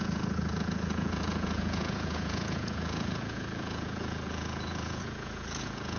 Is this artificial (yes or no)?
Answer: yes